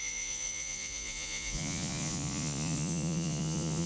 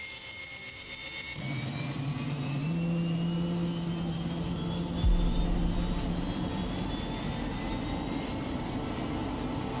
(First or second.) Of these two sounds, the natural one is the second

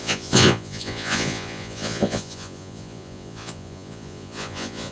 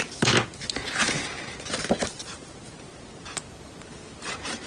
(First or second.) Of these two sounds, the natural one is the second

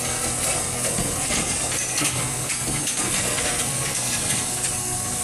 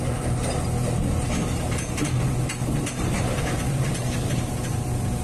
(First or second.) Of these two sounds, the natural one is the second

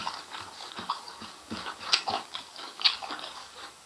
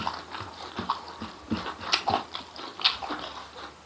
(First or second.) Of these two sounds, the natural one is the second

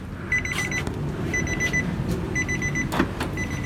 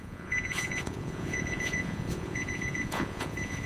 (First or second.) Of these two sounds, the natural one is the first